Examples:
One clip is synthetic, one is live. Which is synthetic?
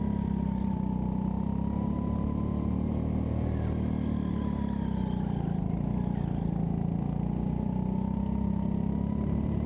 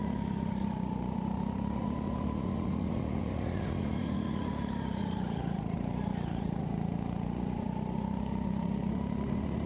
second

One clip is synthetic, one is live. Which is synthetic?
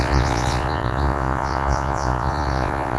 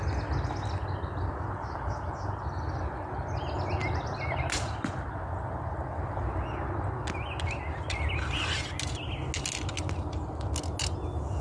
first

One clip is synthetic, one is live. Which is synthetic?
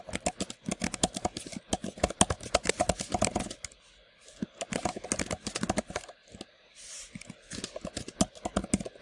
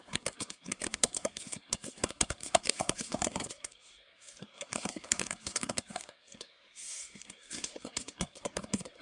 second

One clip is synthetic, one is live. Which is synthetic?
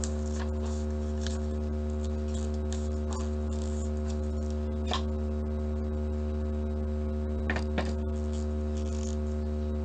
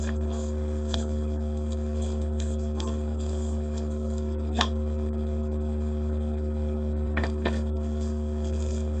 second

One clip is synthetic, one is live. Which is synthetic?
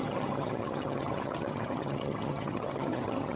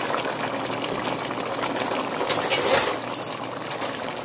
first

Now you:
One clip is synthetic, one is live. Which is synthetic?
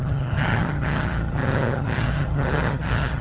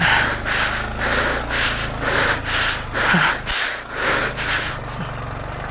first